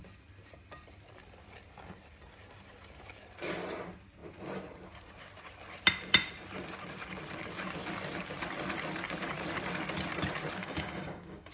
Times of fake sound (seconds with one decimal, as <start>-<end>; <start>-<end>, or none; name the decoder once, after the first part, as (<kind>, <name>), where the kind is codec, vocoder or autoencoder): 10.6-11.5 (codec, DAC)

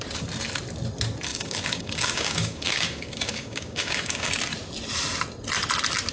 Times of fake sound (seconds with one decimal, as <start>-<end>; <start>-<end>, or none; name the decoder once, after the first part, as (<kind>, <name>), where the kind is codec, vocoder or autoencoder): 1.3-4.3 (codec, DAC)

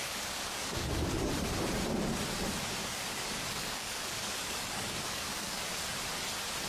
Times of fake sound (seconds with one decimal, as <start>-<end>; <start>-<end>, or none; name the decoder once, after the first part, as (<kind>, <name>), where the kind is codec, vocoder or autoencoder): 0.0-1.3 (codec, DAC); 2.8-5.6

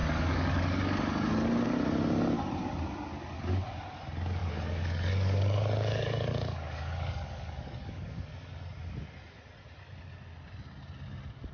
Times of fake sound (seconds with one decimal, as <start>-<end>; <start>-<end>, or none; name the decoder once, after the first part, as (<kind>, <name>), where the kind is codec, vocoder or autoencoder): 0.0-1.5 (codec, DAC); 4.4-8.3

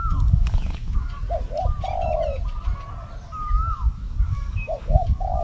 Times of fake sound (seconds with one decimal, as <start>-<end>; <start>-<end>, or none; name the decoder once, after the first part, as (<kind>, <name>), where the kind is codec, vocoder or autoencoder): 0.0-1.2 (codec, DAC); 3.5-5.4

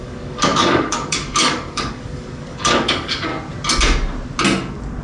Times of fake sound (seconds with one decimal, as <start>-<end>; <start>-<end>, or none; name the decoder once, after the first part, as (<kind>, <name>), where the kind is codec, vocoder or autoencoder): 0.0-3.3 (codec, DAC)